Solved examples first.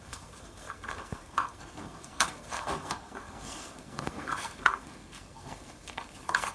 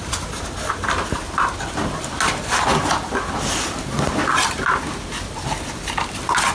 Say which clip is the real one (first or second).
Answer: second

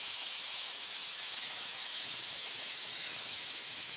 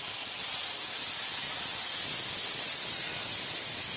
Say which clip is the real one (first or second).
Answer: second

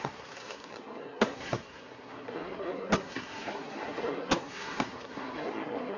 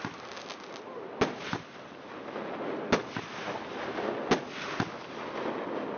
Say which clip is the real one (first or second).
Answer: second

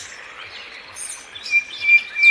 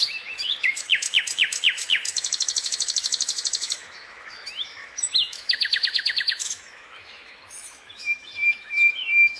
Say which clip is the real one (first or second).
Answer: first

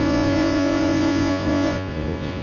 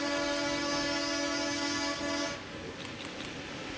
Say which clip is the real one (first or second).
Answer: second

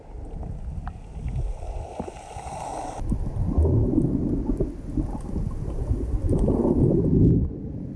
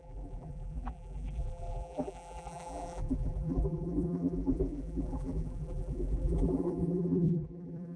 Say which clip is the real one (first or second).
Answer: first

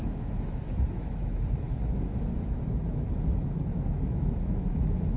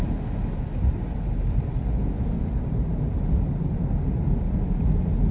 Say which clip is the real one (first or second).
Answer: second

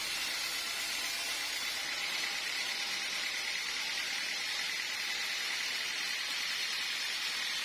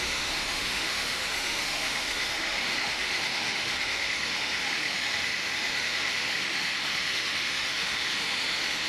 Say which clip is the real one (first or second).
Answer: first